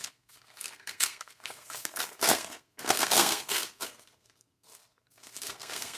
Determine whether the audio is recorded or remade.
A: remade